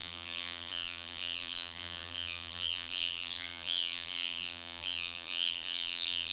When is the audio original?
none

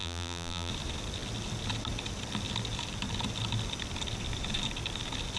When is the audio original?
0.7-5.4

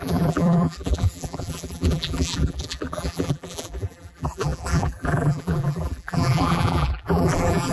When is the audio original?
none

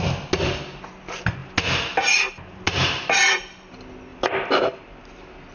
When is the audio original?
0.0-5.5

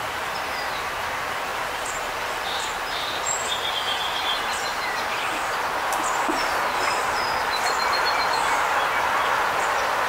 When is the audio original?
0.0-1.5; 3.0-4.7; 5.2-7.4; 8.0-10.1

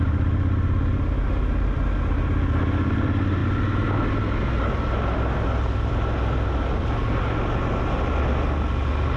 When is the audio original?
0.0-9.2

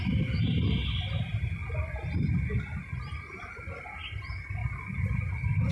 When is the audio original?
1.6-3.5; 4.6-5.7

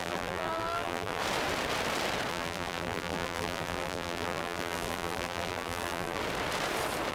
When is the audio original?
1.2-2.3; 6.2-7.1